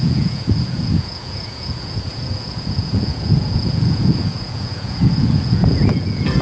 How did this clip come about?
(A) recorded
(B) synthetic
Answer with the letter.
B